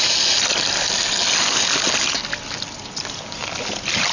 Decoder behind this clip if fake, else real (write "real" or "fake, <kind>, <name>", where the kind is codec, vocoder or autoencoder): real